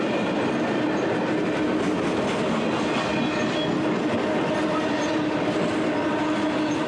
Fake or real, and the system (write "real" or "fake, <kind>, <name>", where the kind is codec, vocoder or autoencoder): real